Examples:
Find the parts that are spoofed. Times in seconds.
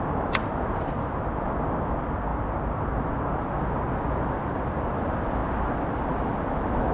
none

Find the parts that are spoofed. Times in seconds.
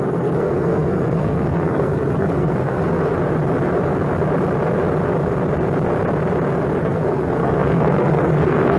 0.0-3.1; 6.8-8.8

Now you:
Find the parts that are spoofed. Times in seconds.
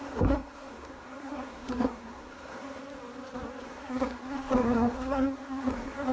0.0-2.8; 3.6-6.1